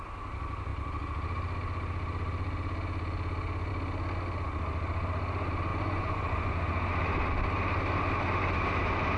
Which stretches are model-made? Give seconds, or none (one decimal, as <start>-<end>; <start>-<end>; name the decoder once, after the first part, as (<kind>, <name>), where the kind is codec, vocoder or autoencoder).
5.7-6.5 (vocoder, Vocos)